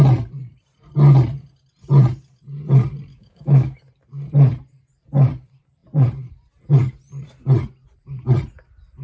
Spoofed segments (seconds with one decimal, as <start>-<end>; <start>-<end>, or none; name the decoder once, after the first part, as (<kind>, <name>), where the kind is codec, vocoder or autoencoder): 3.1-3.8 (autoencoder, DAC-VAE)